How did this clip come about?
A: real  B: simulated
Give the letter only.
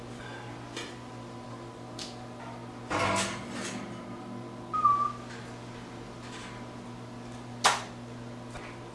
A